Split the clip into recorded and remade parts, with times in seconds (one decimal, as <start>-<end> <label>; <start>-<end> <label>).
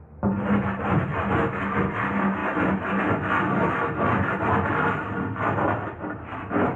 0.0-1.1 remade; 1.1-1.8 recorded; 1.8-2.4 remade; 2.4-4.3 recorded; 4.3-6.8 remade